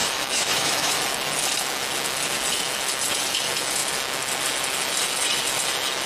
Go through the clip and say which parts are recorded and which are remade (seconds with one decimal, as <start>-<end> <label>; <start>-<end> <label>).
0.0-1.0 remade; 1.0-6.1 recorded